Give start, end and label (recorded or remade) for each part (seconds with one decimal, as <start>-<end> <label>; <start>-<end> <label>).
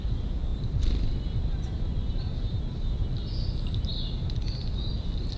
0.0-5.4 recorded